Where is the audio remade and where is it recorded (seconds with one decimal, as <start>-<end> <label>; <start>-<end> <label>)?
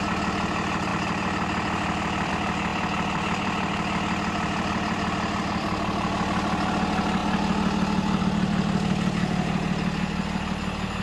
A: 0.0-0.9 recorded; 0.9-2.3 remade; 2.3-2.7 recorded; 2.7-6.7 remade; 6.7-11.0 recorded